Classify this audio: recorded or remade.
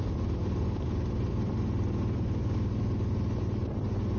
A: recorded